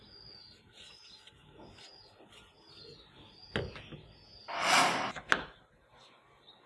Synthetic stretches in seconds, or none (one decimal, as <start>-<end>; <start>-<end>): none